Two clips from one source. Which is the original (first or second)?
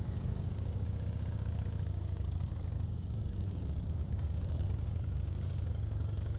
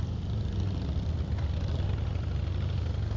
second